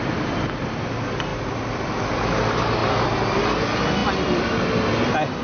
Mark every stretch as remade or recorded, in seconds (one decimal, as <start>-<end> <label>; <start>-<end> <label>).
0.0-5.4 recorded